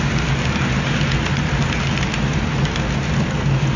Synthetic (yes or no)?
no